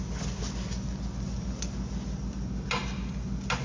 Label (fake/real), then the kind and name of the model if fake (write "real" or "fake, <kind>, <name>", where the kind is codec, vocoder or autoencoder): real